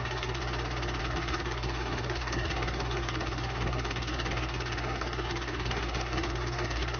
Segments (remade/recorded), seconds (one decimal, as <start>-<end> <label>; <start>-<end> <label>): 0.0-0.4 remade; 0.4-1.0 recorded; 1.0-7.0 remade